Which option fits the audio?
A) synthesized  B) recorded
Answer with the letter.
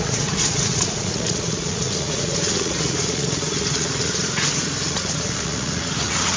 A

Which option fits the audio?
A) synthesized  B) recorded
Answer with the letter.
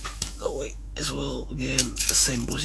A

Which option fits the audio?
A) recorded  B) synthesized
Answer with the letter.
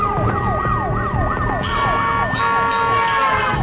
A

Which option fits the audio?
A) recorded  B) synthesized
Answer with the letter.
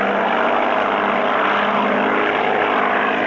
A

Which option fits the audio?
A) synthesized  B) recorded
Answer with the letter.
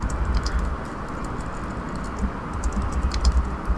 B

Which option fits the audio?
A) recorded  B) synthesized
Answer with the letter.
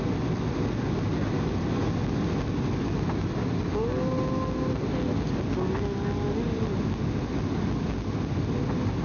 A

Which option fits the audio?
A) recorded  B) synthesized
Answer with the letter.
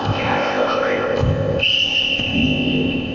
B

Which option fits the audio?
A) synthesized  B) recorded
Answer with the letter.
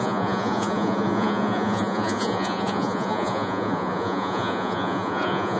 A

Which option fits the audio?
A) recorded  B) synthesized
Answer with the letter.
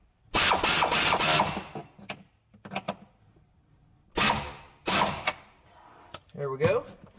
A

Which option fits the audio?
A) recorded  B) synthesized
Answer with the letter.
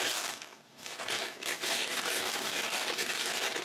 B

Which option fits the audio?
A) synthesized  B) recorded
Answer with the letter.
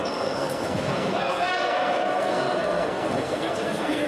A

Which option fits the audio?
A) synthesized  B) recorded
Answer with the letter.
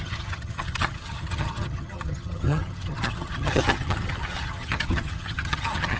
A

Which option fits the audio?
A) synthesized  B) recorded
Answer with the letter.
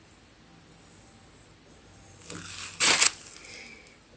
B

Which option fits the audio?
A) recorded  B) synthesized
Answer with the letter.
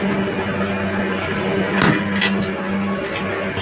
A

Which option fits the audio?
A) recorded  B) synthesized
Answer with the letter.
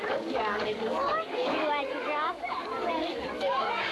B